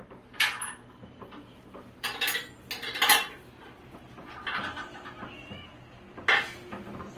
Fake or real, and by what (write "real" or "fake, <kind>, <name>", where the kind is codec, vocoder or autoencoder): real